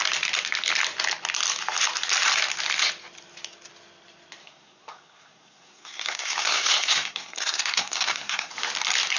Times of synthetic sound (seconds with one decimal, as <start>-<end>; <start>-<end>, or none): 4.4-8.5